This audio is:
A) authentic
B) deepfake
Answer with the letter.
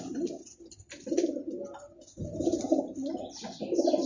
A